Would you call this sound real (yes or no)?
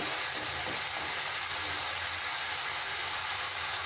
yes